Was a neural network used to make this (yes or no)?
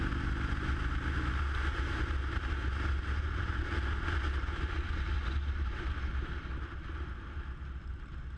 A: no